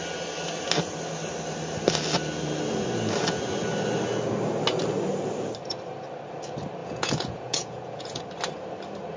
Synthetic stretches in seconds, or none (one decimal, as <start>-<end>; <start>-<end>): 6.8-8.2